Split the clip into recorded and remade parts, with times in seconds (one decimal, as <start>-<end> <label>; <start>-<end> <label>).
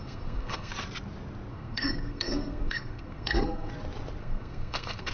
0.0-0.7 remade; 0.7-1.5 recorded; 1.5-3.7 remade; 3.7-4.2 recorded; 4.2-5.1 remade